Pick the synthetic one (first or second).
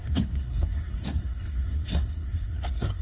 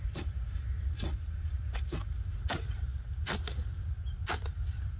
first